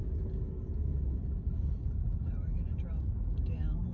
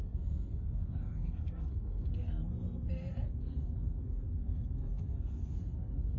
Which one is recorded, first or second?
first